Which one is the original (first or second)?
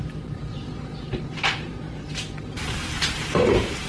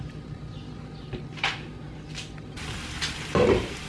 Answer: second